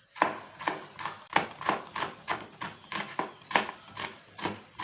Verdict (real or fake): real